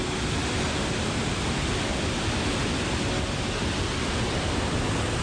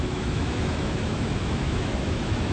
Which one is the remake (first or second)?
second